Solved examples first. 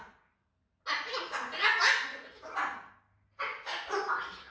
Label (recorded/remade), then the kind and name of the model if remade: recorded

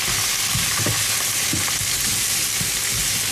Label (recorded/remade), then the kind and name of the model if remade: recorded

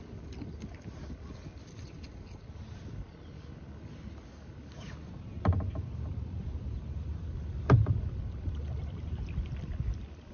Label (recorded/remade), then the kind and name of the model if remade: recorded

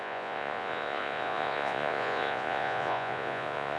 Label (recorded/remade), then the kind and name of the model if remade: remade, vocoder, Vocos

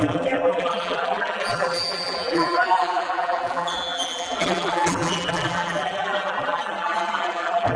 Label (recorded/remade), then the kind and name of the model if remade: remade, vocoder, BigVGAN v2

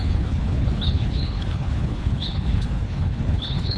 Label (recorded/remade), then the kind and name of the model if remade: remade, codec, HILCodec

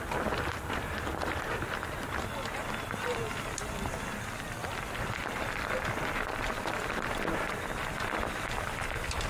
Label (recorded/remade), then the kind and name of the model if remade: remade, vocoder, BigVGAN v2